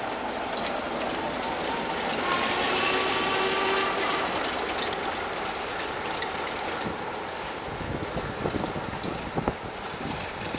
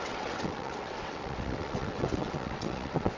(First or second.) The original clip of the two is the first